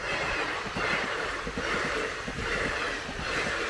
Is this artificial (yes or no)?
no